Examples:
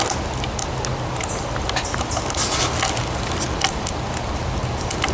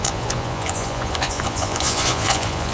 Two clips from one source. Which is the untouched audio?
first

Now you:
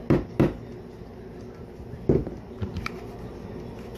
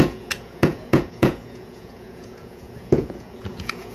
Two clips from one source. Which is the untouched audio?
first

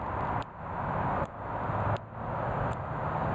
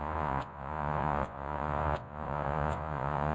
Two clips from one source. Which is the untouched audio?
first